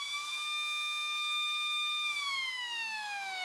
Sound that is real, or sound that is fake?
fake